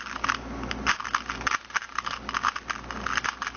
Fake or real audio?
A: real